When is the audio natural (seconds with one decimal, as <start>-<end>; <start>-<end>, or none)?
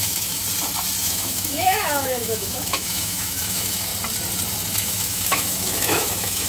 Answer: 0.4-1.0; 3.9-4.7